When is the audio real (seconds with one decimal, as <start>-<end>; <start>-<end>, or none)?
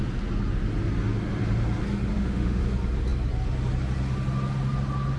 0.0-2.1; 2.6-5.2